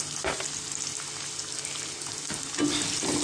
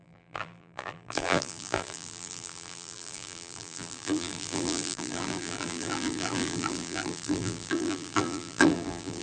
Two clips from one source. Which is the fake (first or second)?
second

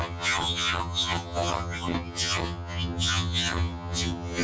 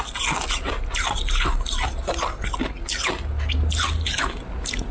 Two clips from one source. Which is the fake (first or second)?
first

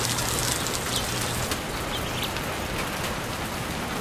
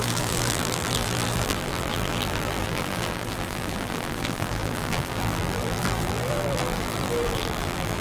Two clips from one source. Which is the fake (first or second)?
second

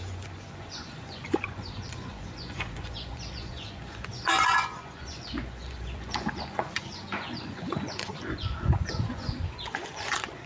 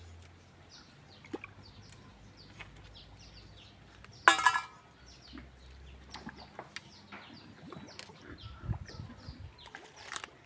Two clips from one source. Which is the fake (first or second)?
first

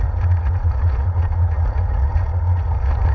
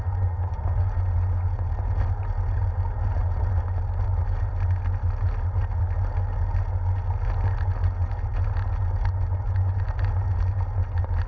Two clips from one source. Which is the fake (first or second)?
first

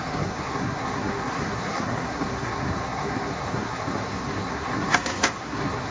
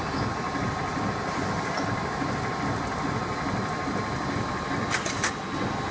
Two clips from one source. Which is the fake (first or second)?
first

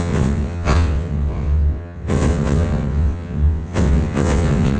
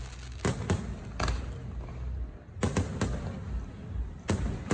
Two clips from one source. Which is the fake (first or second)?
first